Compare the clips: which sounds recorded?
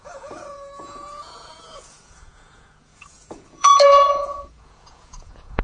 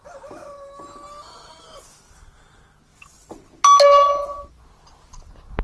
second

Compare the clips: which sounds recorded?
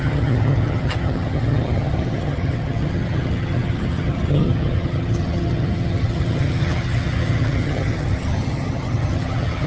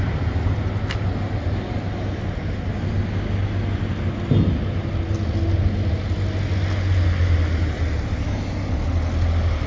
second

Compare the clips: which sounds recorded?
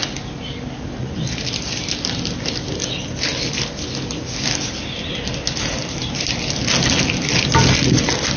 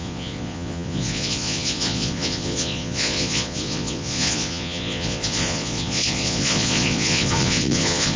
first